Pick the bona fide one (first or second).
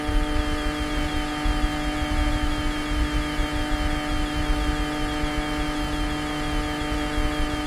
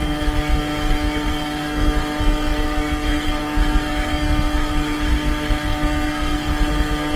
first